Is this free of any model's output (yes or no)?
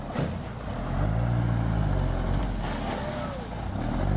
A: yes